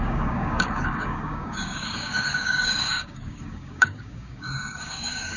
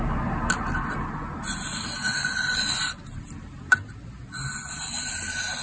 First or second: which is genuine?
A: second